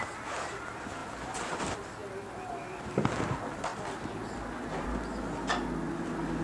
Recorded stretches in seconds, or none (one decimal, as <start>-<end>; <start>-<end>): 0.0-6.4